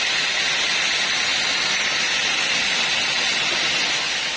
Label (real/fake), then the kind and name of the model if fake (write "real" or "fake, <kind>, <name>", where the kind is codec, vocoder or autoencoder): real